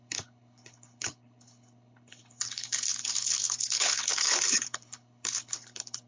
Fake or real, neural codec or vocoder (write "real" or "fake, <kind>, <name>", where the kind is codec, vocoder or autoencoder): fake, codec, HILCodec